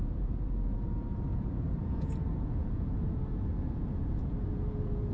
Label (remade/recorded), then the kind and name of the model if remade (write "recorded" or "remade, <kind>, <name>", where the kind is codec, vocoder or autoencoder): remade, vocoder, Vocos